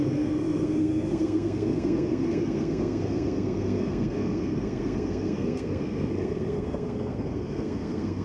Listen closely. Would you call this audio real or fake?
fake